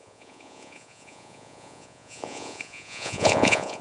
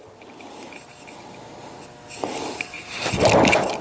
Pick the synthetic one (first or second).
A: first